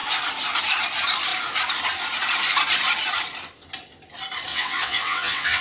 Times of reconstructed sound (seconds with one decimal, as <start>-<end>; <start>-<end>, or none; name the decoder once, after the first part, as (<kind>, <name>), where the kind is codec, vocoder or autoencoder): 4.5-5.6 (vocoder, WaveNeXt)